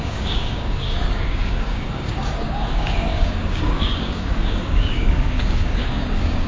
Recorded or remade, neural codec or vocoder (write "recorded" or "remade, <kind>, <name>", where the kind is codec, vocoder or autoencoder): remade, codec, DAC